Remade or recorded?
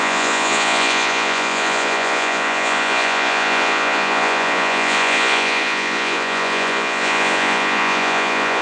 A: remade